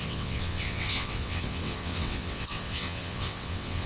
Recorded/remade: remade